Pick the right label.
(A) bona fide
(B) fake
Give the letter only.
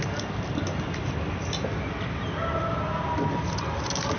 A